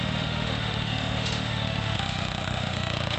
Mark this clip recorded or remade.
remade